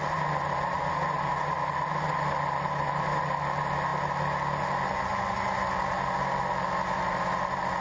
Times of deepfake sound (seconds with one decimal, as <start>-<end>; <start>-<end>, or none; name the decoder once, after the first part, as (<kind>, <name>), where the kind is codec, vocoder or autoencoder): none

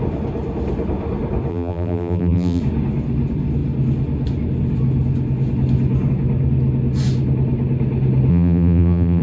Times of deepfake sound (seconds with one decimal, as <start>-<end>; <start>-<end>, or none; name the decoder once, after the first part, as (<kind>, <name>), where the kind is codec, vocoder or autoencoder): 1.5-2.6 (vocoder, BigVGAN v2); 8.3-9.2

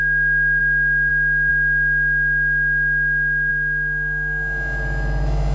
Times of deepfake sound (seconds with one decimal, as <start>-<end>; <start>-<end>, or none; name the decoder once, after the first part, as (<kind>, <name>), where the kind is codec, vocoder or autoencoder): none

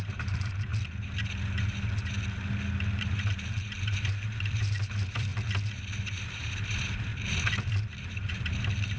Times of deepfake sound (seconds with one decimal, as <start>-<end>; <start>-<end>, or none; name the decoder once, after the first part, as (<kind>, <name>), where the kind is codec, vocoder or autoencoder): 0.0-0.7 (vocoder, BigVGAN v2); 3.0-5.3; 6.0-7.1; 7.7-9.0

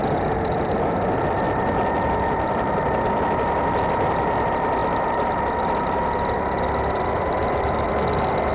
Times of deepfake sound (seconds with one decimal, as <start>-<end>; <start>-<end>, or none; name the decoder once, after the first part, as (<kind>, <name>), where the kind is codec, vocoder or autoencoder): 4.8-7.9 (vocoder, BigVGAN v2)